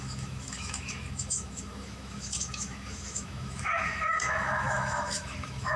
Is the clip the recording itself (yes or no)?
no